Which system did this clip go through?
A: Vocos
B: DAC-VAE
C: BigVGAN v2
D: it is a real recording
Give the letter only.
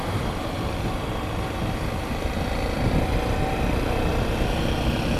D